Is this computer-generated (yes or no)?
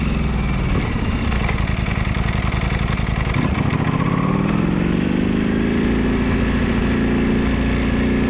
no